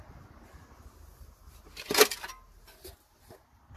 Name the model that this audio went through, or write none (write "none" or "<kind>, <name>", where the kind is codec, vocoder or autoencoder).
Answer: none